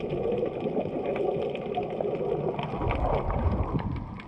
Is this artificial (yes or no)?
no